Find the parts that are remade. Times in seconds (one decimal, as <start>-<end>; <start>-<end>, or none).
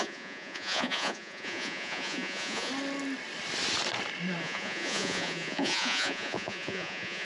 0.0-2.7; 4.4-7.2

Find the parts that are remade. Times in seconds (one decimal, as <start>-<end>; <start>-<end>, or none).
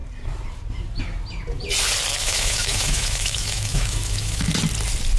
2.1-4.5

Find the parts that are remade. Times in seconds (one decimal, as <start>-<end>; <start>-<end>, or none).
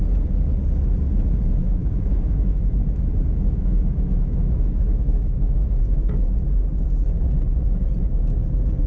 1.6-6.1